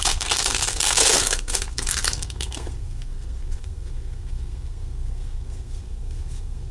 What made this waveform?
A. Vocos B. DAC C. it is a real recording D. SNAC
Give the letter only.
D